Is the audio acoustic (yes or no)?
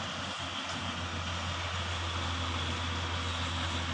yes